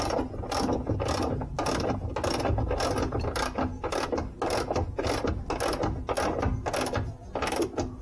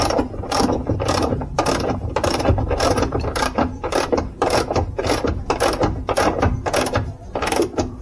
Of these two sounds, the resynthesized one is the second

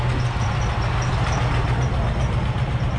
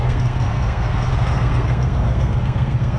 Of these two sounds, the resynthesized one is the second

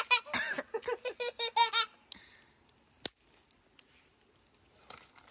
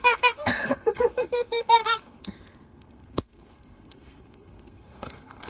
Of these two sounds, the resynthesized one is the second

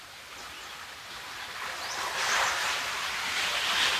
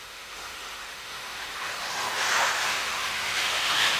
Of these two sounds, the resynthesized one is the second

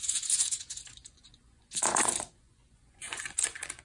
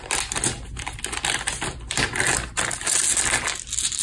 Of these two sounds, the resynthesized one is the first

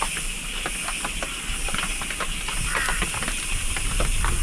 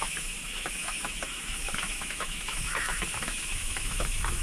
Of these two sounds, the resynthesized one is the second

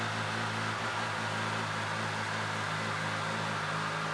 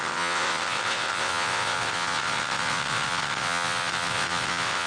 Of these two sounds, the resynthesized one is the second